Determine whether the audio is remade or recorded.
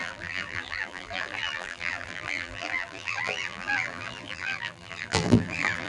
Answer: remade